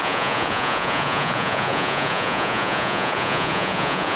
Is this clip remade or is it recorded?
remade